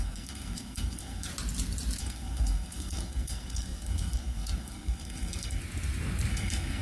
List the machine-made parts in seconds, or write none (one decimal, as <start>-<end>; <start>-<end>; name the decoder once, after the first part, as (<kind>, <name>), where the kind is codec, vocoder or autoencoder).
0.0-1.3 (codec, SNAC); 2.0-5.6; 6.3-6.8